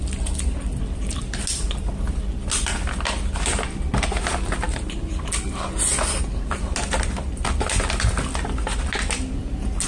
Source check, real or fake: real